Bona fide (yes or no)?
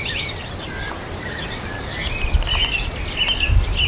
yes